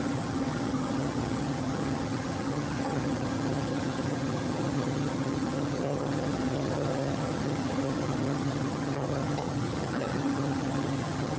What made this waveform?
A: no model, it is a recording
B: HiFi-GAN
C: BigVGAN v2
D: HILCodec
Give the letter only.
B